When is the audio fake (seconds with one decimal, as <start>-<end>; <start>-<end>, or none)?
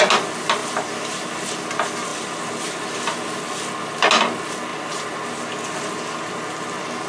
0.6-1.3; 2.1-3.7; 4.7-5.2